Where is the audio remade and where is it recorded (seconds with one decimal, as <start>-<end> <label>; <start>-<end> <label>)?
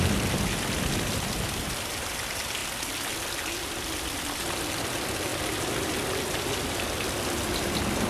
0.0-8.1 recorded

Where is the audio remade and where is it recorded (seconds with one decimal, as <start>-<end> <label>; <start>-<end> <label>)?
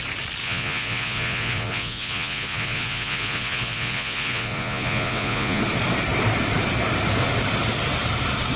0.0-0.4 recorded; 0.4-5.6 remade; 5.6-8.6 recorded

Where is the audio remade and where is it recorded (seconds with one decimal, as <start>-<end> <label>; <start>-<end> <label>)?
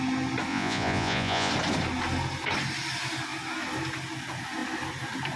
0.0-0.5 recorded; 0.5-1.5 remade; 1.5-5.4 recorded